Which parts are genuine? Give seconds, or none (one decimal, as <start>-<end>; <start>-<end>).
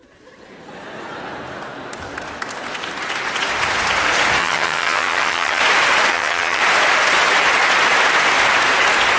0.0-4.4; 5.6-6.1; 6.6-9.2